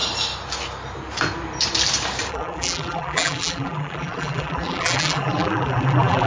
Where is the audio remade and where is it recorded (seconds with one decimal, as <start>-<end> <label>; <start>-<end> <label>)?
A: 0.0-2.3 recorded; 2.3-6.3 remade